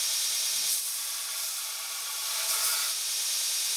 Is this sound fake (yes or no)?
no